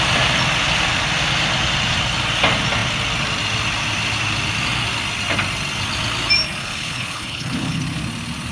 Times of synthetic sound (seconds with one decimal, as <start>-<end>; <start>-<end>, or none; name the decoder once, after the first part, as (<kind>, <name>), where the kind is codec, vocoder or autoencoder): 6.6-7.8 (codec, HILCodec)